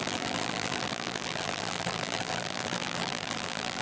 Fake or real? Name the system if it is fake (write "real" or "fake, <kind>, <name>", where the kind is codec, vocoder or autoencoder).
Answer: fake, vocoder, BigVGAN v2